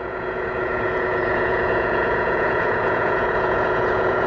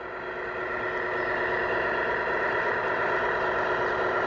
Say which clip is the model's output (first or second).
first